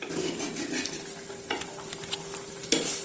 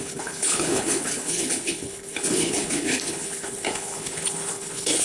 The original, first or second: first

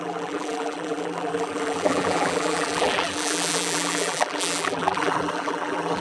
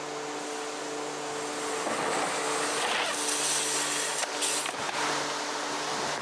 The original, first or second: second